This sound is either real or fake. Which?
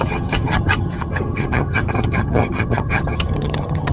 fake